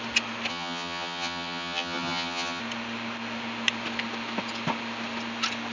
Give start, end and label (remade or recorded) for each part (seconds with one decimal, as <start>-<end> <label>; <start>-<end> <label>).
0.0-0.5 recorded; 0.5-2.6 remade; 2.6-5.7 recorded